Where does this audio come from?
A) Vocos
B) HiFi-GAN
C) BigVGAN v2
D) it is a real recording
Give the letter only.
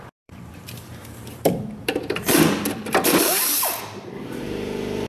C